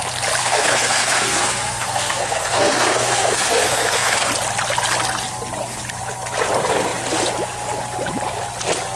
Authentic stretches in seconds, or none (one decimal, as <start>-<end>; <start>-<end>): 0.0-0.4; 4.3-9.0